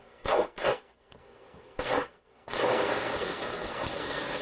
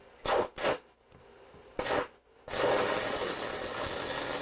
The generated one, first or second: first